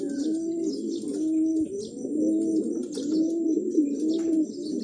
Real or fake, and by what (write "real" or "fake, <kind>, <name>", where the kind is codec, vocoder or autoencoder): real